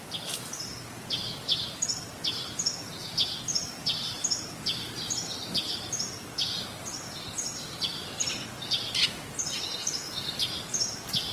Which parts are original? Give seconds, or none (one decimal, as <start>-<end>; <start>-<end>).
0.0-11.3